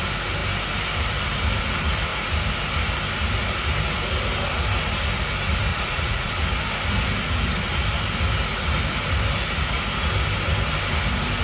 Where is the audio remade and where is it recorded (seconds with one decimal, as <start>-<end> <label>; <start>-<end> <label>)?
0.0-5.7 recorded; 5.7-6.3 remade; 6.3-11.4 recorded